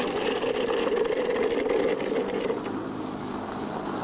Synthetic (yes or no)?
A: no